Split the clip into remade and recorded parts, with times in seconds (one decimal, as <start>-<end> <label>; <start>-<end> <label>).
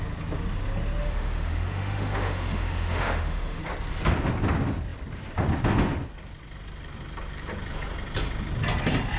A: 0.0-1.0 recorded; 1.0-3.6 remade; 3.6-9.2 recorded